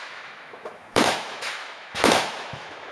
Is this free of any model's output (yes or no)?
no